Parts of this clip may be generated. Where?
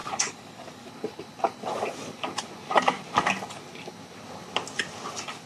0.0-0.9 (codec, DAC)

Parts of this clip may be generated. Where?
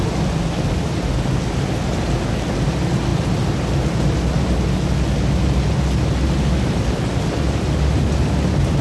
none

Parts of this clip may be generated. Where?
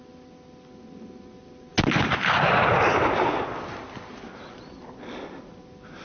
none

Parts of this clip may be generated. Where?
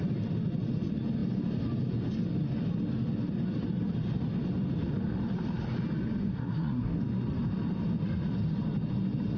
6.3-7.0 (codec, SNAC)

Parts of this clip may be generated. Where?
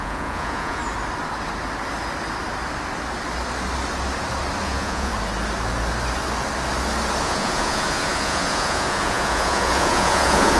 0.0-0.8 (vocoder, Vocos); 4.6-5.1; 7.2-10.6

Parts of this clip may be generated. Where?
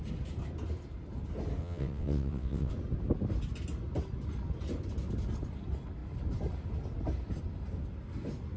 1.6-2.7 (vocoder, WaveNeXt)